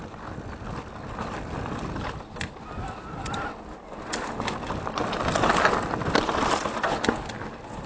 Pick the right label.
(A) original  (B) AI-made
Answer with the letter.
A